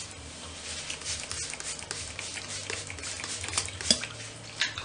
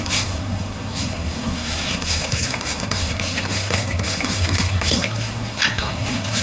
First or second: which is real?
first